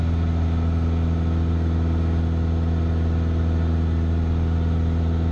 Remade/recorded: recorded